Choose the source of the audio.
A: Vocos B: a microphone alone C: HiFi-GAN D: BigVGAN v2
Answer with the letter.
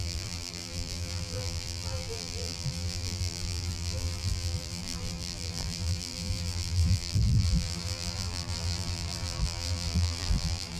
D